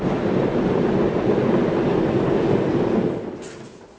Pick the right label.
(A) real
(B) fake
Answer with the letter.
A